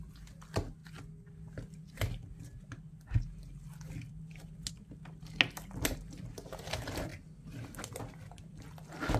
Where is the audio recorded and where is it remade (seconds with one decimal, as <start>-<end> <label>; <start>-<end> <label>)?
0.0-9.2 recorded